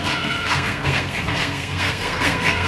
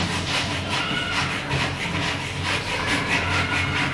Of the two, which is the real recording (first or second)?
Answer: second